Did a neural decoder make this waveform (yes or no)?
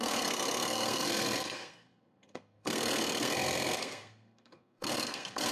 yes